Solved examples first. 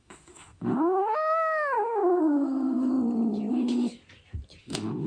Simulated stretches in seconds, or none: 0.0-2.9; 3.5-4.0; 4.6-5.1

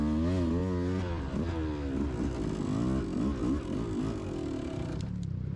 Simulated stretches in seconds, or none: none

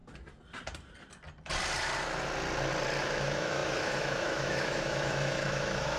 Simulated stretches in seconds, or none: 3.0-6.0